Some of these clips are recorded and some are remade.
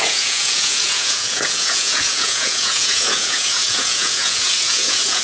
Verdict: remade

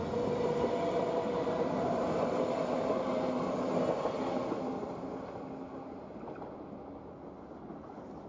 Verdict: recorded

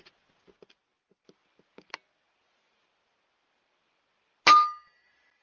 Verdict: recorded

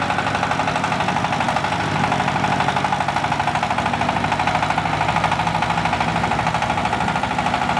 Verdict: recorded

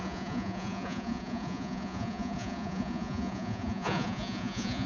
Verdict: remade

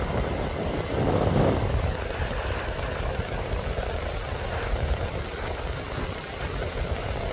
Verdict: recorded